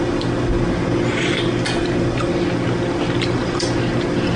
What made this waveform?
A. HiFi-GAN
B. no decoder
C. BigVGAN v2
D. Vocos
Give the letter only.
B